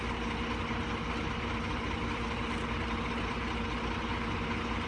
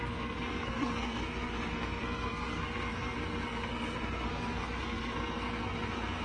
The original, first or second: first